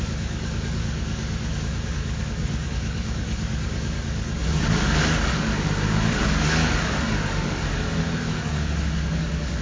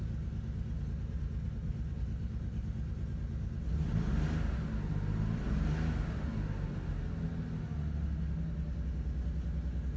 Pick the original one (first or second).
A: second